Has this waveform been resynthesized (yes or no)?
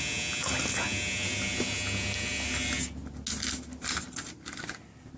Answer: no